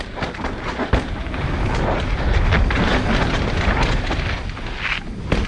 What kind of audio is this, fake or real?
real